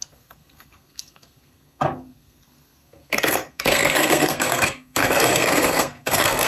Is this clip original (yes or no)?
no